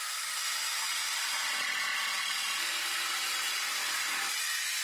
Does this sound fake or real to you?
real